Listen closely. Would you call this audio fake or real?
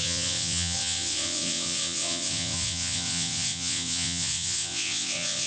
fake